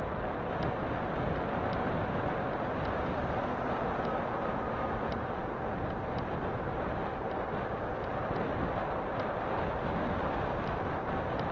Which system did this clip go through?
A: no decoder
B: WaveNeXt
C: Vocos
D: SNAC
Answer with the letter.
A